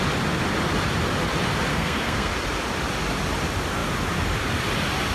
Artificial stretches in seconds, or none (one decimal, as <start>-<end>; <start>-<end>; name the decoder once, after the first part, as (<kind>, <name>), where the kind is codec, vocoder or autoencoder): 1.7-2.3 (codec, SNAC)